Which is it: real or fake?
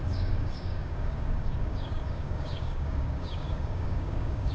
fake